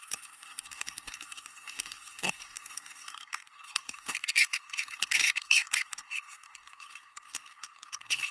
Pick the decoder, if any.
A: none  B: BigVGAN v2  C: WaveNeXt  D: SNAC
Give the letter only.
D